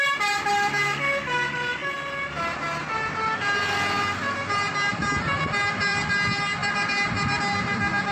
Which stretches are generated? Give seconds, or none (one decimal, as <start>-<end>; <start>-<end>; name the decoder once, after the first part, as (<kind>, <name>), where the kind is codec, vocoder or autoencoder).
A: 5.9-7.4 (vocoder, BigVGAN v2)